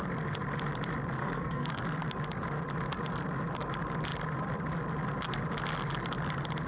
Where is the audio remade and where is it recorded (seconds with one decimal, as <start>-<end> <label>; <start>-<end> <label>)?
0.0-1.2 recorded; 1.2-1.8 remade; 1.8-6.7 recorded